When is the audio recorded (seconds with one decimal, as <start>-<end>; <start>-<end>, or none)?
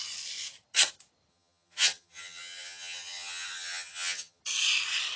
0.0-1.3; 4.4-5.2